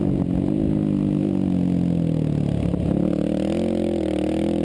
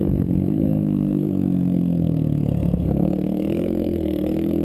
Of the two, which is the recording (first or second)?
first